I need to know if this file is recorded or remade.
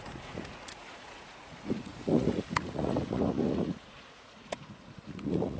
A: remade